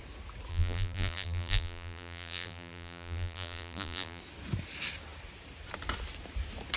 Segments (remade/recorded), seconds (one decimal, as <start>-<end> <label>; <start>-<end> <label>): 0.0-0.5 recorded; 0.5-4.2 remade; 4.2-6.8 recorded